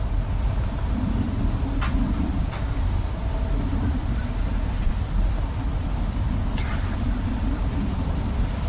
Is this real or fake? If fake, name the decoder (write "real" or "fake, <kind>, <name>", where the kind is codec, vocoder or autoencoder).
real